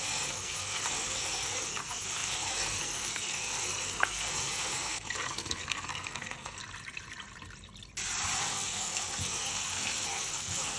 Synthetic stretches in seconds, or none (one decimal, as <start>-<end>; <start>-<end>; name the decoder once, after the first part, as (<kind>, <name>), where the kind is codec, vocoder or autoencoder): 0.0-6.6 (codec, SNAC); 8.4-10.8